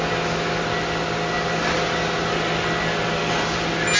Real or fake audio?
real